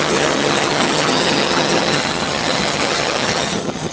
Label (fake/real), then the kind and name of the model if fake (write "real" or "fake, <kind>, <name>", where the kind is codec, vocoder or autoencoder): fake, vocoder, HiFi-GAN